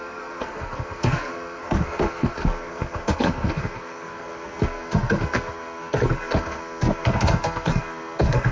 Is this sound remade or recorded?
remade